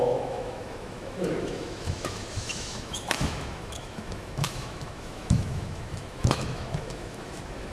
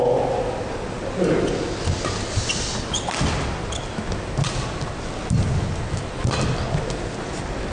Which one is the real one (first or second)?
second